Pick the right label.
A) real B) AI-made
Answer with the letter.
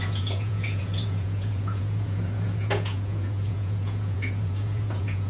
B